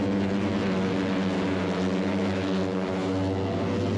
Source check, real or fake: real